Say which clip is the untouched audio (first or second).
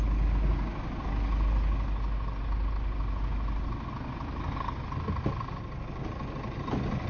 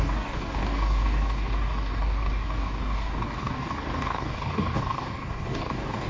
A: first